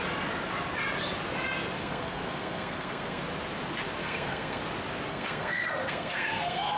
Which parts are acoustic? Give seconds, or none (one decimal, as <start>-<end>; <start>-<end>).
0.0-1.8; 3.2-4.0; 4.6-5.1

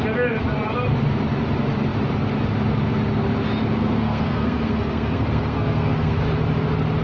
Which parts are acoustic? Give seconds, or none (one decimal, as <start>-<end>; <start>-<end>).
0.0-3.8; 6.2-7.0

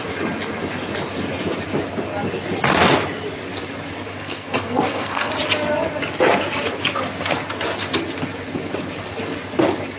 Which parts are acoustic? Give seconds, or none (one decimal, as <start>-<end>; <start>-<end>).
0.0-4.1; 5.3-10.0